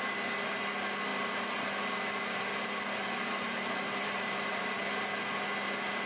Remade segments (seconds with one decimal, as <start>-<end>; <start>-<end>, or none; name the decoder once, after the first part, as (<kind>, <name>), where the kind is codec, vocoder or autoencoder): 1.1-4.8 (vocoder, BigVGAN v2)